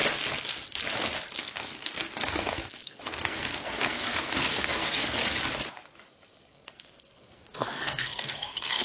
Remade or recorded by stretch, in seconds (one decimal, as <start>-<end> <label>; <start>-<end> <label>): 0.0-1.4 recorded; 1.4-5.2 remade; 5.2-6.5 recorded; 6.5-8.8 remade